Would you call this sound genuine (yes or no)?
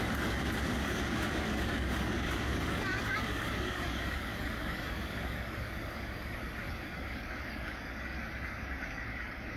no